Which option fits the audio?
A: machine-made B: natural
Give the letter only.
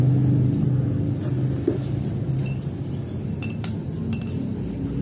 B